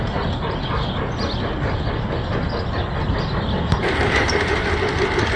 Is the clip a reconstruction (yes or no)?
no